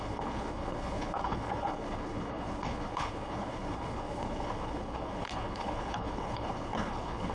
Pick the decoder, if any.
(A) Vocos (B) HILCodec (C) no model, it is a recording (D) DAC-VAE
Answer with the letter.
B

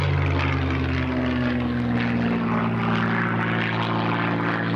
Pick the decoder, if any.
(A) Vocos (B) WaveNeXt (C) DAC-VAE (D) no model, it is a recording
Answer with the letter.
D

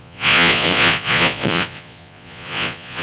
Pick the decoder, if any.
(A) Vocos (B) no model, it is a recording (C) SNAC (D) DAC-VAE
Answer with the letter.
A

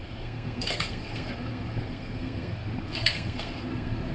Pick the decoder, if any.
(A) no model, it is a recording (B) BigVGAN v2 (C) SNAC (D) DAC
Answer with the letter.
C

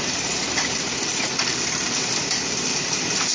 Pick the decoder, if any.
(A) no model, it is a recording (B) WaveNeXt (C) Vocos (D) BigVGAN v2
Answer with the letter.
D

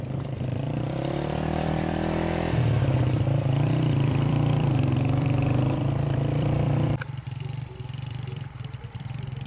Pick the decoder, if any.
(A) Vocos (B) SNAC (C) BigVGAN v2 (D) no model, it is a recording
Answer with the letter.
C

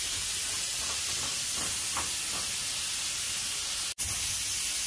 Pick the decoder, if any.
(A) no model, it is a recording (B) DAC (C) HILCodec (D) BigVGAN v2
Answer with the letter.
A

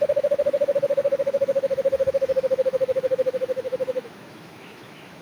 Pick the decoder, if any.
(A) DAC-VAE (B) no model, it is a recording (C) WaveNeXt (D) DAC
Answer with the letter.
A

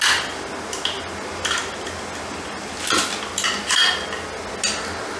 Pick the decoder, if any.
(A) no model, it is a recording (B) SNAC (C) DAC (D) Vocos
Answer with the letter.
A